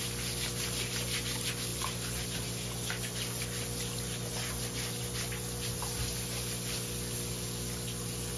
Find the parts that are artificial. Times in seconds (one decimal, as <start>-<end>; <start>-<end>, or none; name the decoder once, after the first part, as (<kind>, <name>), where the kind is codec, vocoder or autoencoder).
none

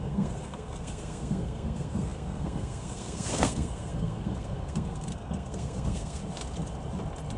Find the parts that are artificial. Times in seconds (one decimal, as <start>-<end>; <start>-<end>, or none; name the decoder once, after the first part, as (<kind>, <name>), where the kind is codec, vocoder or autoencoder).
0.0-6.2 (codec, SNAC)

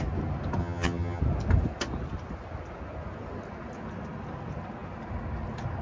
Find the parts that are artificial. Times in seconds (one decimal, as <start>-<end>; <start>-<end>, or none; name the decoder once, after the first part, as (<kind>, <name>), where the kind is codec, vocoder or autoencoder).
0.6-1.2 (vocoder, HiFi-GAN)

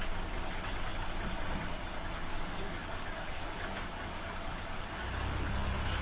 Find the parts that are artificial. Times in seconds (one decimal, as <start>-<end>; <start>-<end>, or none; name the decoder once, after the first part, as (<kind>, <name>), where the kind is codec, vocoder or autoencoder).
2.3-6.0 (codec, DAC)

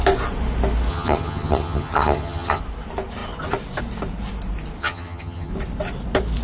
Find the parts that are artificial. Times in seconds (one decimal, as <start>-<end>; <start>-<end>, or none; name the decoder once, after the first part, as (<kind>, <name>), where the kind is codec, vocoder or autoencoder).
0.9-2.6 (vocoder, HiFi-GAN); 4.8-5.5